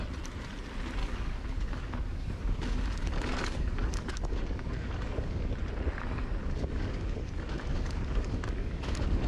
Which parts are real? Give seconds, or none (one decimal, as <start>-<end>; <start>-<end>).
0.0-1.0; 5.5-6.4